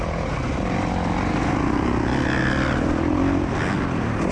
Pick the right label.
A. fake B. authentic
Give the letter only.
B